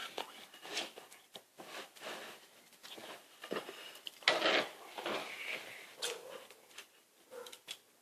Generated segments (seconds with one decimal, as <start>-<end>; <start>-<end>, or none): none